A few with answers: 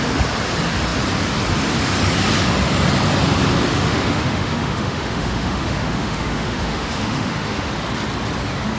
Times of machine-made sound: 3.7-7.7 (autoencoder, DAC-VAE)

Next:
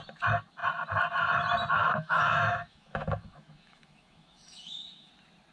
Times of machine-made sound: 1.8-5.1 (autoencoder, DAC-VAE)